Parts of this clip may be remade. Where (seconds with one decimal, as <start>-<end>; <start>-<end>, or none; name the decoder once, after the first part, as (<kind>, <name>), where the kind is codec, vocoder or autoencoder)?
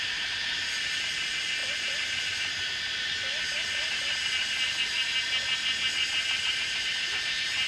none